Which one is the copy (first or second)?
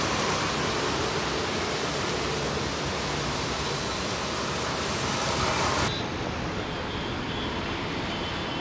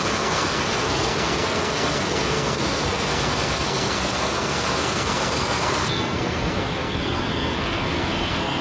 second